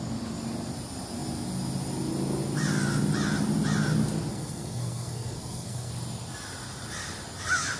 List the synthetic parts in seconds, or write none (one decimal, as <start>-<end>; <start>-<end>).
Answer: 4.3-5.9